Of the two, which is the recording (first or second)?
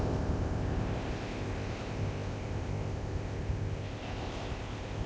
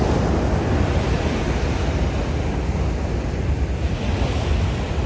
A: second